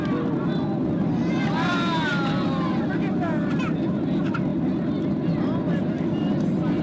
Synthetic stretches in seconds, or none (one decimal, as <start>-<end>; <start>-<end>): 0.8-1.3